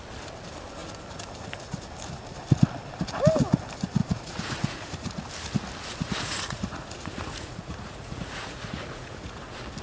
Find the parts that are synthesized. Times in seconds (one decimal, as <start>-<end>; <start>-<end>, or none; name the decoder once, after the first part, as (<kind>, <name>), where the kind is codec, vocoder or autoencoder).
4.0-5.3 (vocoder, Vocos); 6.0-9.4